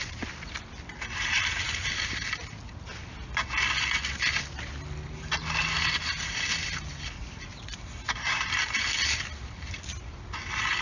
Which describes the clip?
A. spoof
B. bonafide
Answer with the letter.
B